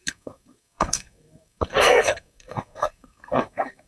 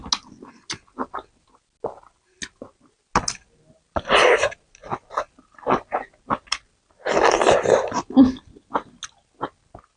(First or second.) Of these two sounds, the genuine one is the second